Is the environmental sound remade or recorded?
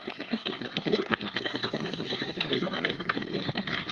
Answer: remade